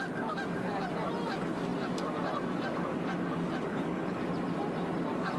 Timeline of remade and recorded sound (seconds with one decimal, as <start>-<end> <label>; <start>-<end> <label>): 0.0-3.7 recorded; 3.7-4.2 remade; 4.2-5.4 recorded